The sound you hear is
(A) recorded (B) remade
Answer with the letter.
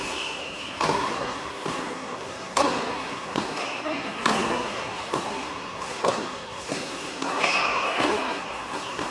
B